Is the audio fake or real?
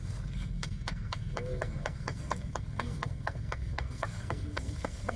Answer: fake